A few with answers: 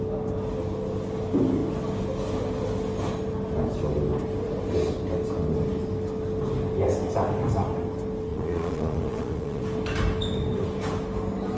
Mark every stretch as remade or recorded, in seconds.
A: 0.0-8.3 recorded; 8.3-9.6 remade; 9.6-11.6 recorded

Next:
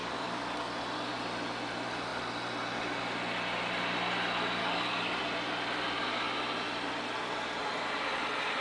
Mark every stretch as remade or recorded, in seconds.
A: 0.0-0.7 remade; 0.7-4.6 recorded; 4.6-5.2 remade; 5.2-8.6 recorded

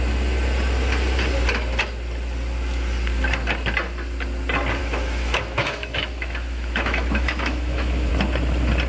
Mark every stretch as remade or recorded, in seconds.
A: 0.0-4.8 recorded; 4.8-8.1 remade; 8.1-8.9 recorded

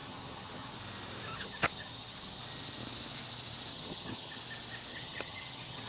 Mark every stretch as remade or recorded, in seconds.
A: 0.0-0.8 remade; 0.8-1.3 recorded; 1.3-2.4 remade; 2.4-3.7 recorded; 3.7-4.4 remade; 4.4-4.9 recorded; 4.9-5.9 remade

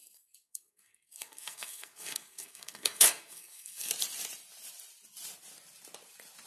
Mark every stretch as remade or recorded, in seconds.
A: 0.0-3.9 remade; 3.9-6.5 recorded